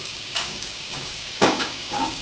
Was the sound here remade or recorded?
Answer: remade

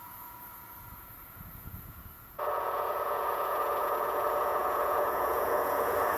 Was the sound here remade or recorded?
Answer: remade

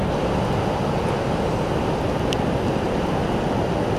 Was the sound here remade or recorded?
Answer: recorded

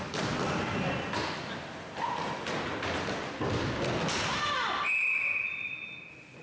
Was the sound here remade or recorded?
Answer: recorded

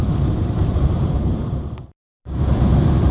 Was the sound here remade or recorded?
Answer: remade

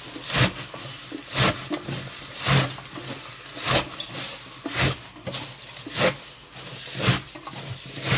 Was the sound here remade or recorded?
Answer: recorded